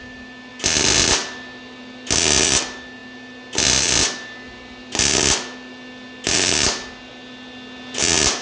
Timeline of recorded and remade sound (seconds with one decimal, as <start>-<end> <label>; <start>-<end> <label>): 0.0-8.4 recorded